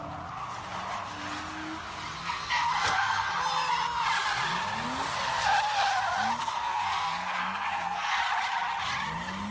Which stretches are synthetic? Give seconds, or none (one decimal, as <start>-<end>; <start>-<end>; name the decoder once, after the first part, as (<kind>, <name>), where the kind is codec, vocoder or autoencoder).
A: 2.2-3.3 (codec, SNAC); 6.4-8.2